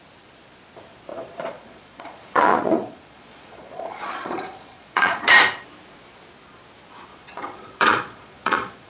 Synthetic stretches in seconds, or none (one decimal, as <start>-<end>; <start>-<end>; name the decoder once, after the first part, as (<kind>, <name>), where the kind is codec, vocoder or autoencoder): 1.1-5.3 (vocoder, Vocos); 7.1-8.9